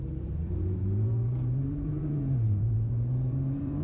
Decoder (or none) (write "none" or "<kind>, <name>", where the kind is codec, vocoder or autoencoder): vocoder, BigVGAN v2